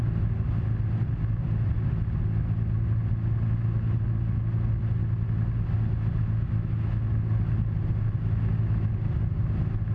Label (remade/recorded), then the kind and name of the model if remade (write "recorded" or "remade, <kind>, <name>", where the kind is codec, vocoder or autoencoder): recorded